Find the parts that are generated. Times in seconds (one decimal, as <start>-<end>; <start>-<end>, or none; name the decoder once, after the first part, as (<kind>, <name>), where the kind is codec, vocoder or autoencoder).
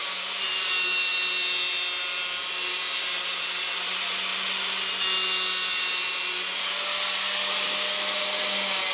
0.0-0.7 (vocoder, BigVGAN v2)